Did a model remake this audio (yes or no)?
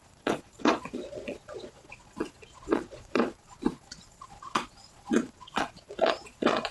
yes